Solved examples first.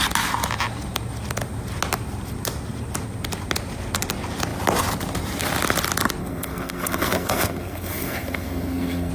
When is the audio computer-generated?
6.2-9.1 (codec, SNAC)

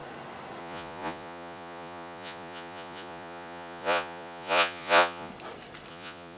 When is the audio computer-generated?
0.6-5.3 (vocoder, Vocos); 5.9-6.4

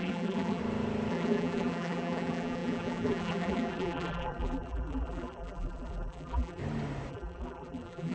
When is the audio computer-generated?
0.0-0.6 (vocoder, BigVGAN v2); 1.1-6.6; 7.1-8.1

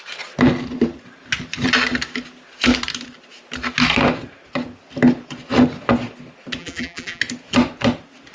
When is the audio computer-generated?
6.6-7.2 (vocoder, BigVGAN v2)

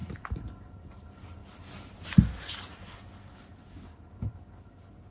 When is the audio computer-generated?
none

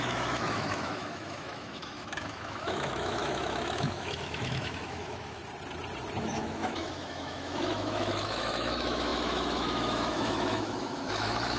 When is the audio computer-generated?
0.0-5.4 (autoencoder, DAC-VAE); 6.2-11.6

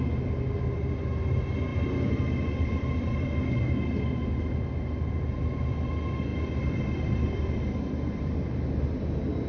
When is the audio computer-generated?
1.7-4.2 (vocoder, BigVGAN v2); 6.3-8.7